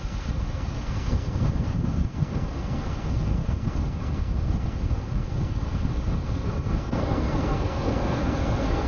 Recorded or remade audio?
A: remade